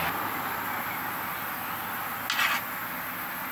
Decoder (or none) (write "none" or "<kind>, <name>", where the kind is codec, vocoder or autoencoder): none